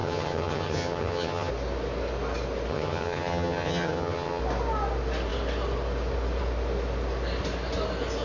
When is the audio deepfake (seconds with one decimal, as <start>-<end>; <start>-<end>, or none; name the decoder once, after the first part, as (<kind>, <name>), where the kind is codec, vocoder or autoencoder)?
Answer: 0.0-1.5 (vocoder, HiFi-GAN); 2.7-4.4